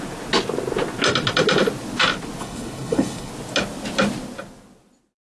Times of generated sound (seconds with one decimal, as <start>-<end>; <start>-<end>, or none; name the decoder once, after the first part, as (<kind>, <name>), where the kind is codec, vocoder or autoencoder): 2.4-3.3 (codec, HILCodec)